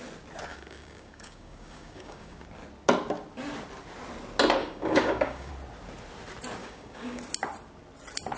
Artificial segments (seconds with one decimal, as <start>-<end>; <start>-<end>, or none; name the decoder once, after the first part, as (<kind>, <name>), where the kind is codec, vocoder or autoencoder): 0.5-2.4 (codec, DAC); 4.6-5.5; 6.6-7.2